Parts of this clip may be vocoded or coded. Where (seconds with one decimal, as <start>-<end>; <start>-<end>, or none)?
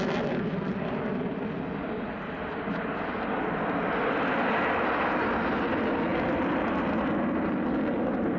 none